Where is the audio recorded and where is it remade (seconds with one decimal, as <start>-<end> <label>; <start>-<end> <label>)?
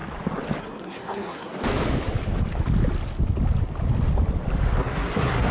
0.0-0.6 recorded; 0.6-1.5 remade; 1.5-4.8 recorded; 4.8-5.5 remade